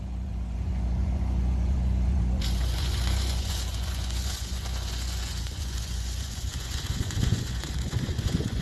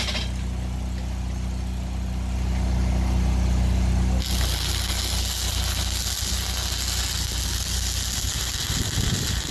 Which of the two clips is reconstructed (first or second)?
first